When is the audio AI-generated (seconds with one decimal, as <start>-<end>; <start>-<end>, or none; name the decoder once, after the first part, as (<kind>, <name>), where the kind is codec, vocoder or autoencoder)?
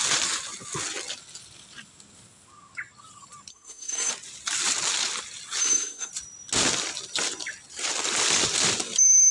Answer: 3.5-4.1 (codec, SNAC); 5.6-6.1